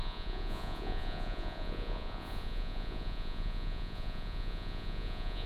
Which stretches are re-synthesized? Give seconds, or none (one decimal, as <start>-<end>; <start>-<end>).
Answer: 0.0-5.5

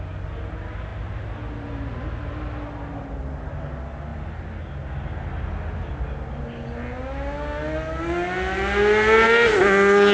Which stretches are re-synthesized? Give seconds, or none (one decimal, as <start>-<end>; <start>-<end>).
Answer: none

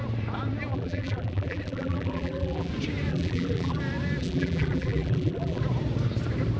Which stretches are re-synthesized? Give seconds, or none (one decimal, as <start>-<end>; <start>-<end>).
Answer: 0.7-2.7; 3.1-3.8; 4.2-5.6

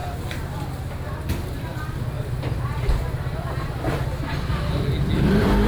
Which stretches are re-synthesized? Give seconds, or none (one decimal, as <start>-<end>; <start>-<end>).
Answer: none